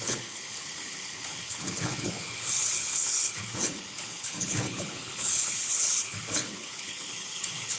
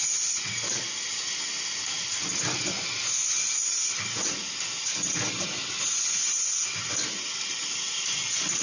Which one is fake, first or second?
first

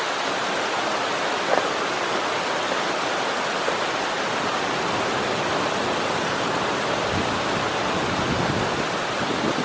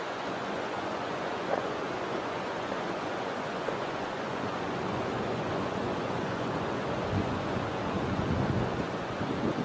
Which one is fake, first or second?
second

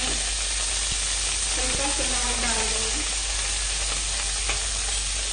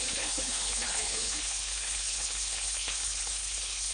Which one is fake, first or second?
second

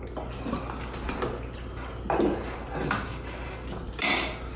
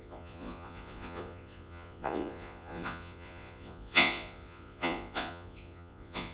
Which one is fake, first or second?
second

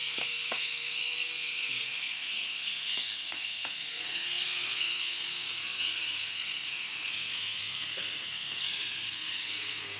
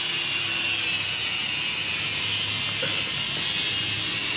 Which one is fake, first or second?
first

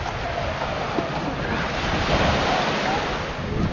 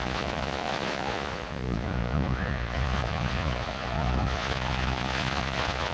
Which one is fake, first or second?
second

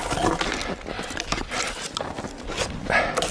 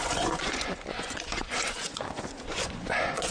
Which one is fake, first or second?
second